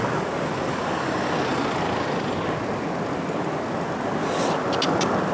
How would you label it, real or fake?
real